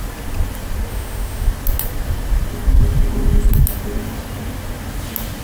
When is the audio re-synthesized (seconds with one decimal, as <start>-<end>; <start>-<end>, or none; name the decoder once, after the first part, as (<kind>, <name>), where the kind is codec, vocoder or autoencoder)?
0.9-1.5 (autoencoder, DAC-VAE)